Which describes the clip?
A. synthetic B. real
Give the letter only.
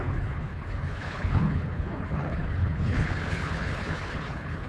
A